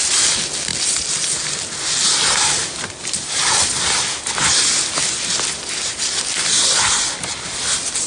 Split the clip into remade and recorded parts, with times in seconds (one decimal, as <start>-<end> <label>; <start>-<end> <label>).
0.0-8.1 recorded